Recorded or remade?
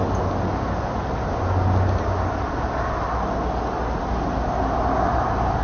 recorded